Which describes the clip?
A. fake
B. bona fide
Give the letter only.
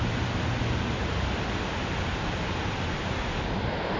B